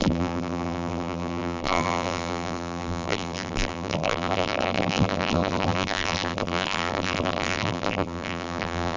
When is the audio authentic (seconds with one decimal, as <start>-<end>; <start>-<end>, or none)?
none